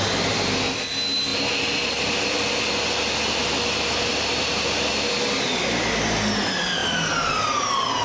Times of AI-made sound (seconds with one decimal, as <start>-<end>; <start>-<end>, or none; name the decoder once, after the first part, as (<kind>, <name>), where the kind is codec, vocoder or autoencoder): none